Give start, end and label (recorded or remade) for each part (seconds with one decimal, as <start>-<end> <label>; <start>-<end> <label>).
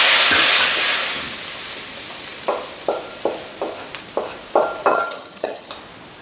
0.0-4.9 recorded; 4.9-5.7 remade; 5.7-6.2 recorded